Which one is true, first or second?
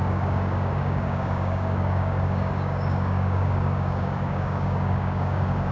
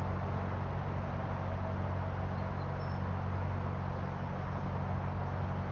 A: second